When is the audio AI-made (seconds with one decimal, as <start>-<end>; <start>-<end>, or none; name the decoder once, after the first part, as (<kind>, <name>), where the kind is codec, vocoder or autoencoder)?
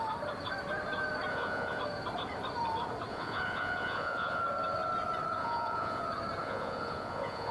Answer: 1.3-1.8 (vocoder, Vocos); 3.1-4.4; 5.4-6.0; 6.4-7.5